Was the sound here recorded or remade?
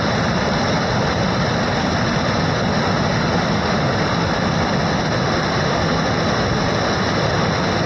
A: recorded